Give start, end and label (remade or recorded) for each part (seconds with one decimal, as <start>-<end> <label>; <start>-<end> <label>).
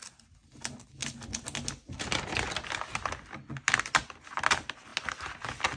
0.0-5.8 recorded